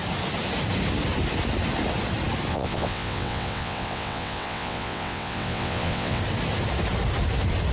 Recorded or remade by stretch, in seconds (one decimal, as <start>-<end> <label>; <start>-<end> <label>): 0.0-2.5 recorded; 2.5-6.2 remade; 6.2-7.7 recorded